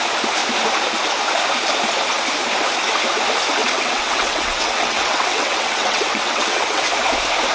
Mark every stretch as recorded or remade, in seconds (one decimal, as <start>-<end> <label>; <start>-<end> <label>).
0.0-3.6 recorded; 3.6-6.8 remade; 6.8-7.5 recorded

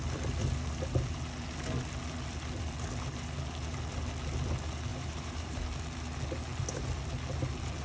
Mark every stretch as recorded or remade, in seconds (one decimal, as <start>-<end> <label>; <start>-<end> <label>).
0.0-4.9 recorded; 4.9-5.6 remade; 5.6-7.8 recorded

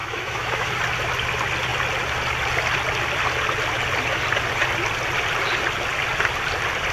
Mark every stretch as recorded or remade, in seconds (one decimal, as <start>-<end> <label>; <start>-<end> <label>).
0.0-0.7 remade; 0.7-6.9 recorded

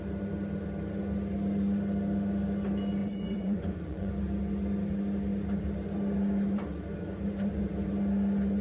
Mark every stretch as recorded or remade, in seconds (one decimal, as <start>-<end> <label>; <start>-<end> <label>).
0.0-3.0 recorded; 3.0-4.1 remade; 4.1-8.6 recorded

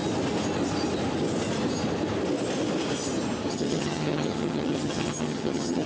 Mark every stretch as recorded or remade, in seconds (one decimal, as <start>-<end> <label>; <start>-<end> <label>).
0.0-3.5 recorded; 3.5-5.9 remade

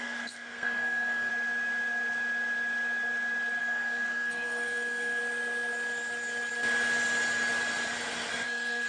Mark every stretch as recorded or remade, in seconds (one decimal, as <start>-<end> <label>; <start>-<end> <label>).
0.0-1.3 remade; 1.3-3.6 recorded; 3.6-5.2 remade; 5.2-8.3 recorded; 8.3-8.9 remade

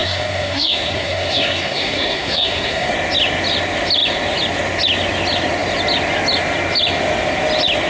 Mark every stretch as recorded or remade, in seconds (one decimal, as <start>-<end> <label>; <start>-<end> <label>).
0.0-2.9 remade; 2.9-7.9 recorded

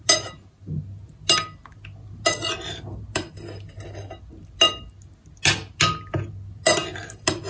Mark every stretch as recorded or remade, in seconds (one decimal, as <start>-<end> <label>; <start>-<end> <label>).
0.0-7.5 recorded